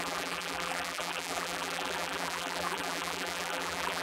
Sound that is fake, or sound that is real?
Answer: fake